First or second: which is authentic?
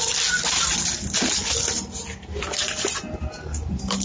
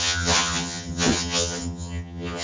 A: first